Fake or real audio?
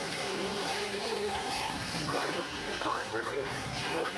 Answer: fake